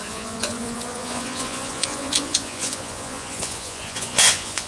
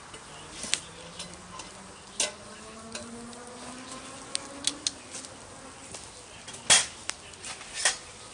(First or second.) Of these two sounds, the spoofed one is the first